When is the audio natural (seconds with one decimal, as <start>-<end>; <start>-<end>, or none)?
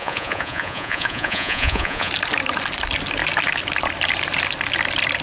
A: 2.1-5.2